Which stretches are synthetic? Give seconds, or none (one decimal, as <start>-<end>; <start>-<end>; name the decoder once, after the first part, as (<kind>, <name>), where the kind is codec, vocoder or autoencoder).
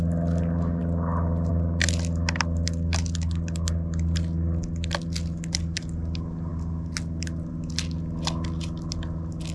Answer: none